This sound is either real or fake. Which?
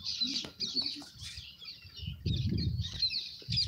real